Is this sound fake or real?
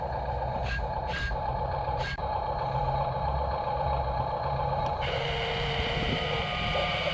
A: fake